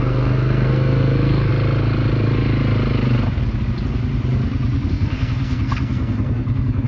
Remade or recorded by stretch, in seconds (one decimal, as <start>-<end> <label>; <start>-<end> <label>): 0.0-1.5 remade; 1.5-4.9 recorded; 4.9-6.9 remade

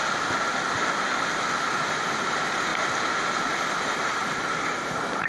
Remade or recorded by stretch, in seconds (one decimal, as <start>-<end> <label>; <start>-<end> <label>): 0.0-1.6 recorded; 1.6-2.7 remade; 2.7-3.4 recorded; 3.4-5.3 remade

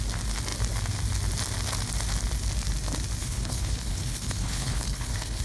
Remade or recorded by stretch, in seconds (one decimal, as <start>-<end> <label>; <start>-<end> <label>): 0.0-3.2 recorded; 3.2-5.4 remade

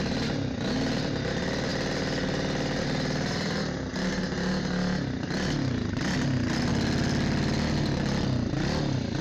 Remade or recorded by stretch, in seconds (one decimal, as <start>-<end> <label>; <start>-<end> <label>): 0.0-9.2 recorded

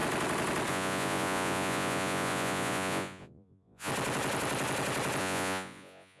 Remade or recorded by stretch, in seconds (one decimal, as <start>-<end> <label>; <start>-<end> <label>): 0.0-0.7 recorded; 0.7-3.9 remade; 3.9-5.2 recorded; 5.2-6.2 remade